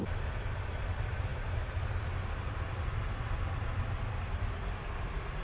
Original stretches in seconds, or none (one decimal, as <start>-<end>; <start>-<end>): 0.0-5.4